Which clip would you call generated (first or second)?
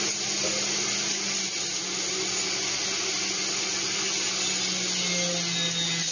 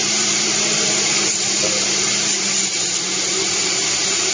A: second